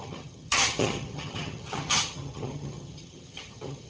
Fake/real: fake